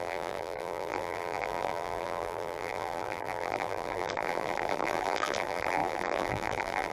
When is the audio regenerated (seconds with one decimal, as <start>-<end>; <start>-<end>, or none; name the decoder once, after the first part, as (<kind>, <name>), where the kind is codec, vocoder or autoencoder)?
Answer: 0.0-6.9 (vocoder, BigVGAN v2)